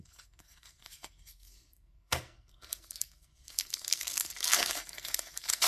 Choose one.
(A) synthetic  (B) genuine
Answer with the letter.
A